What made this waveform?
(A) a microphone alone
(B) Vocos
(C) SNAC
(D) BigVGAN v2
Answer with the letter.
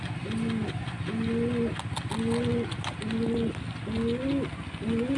A